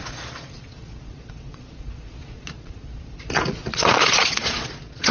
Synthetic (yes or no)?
yes